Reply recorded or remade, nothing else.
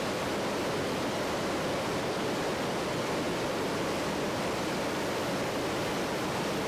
recorded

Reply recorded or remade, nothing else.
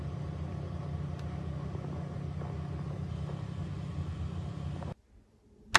recorded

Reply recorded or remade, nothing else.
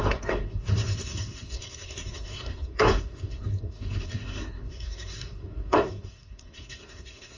remade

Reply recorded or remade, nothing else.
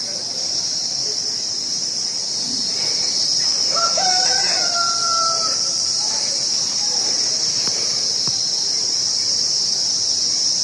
remade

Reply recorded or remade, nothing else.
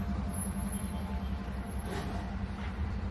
recorded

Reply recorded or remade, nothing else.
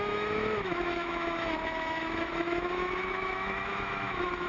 remade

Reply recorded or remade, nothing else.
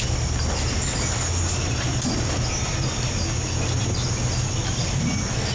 recorded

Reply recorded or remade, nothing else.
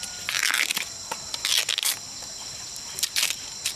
recorded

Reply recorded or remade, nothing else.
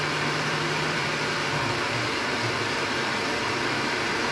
remade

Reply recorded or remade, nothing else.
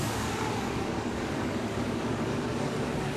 remade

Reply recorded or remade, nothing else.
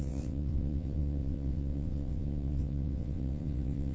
remade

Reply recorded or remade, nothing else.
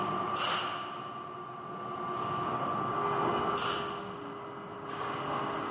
recorded